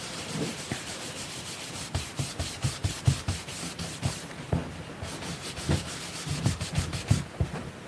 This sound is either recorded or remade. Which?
remade